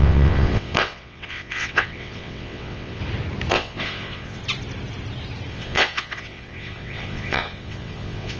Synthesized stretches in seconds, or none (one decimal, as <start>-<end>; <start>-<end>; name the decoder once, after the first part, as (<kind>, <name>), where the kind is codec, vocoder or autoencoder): 0.0-3.0 (vocoder, WaveNeXt); 3.5-4.4; 5.5-8.4